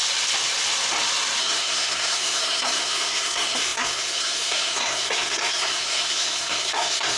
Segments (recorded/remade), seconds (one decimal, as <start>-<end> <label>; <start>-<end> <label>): 0.0-1.4 recorded; 1.4-7.2 remade

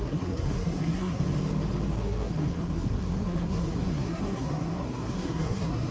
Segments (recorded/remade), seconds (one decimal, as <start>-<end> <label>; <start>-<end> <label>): 0.0-1.2 remade; 1.2-1.9 recorded; 1.9-5.9 remade

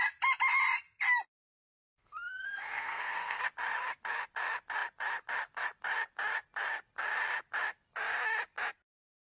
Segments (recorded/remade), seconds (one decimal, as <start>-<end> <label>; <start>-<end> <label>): 0.0-1.8 recorded; 1.8-3.4 remade; 3.4-9.3 recorded

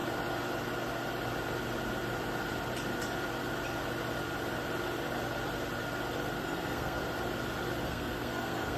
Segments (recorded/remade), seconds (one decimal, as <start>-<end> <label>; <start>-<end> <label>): 0.0-6.4 recorded; 6.4-7.0 remade; 7.0-7.8 recorded; 7.8-8.8 remade

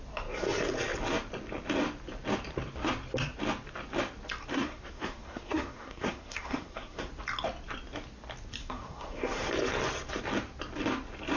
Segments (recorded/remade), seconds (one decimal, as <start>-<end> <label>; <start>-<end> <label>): 0.0-4.5 recorded; 4.5-7.1 remade; 7.1-8.6 recorded; 8.6-9.5 remade; 9.5-11.4 recorded

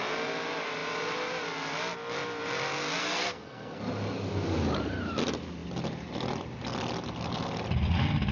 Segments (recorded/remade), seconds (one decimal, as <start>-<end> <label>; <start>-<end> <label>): 0.0-3.0 recorded; 3.0-3.8 remade; 3.8-8.3 recorded